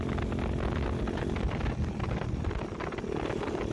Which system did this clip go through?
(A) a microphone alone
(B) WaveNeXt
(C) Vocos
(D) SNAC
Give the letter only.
A